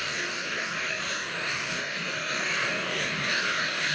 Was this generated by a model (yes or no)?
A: yes